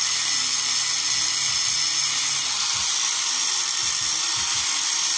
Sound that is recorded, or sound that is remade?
recorded